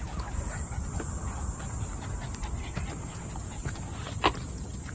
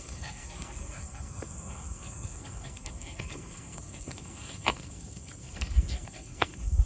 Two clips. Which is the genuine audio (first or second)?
first